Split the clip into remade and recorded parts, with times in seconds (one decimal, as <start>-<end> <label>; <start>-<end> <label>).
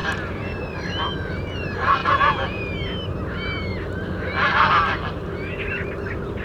0.0-2.0 recorded; 2.0-2.6 remade; 2.6-6.4 recorded